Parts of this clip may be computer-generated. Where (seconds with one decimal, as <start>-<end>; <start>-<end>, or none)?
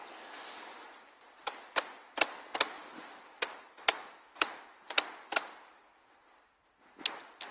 2.8-4.7